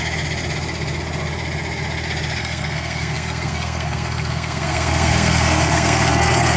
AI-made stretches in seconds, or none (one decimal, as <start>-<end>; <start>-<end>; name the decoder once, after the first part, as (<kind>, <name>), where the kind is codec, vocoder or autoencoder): 2.4-6.6 (codec, SNAC)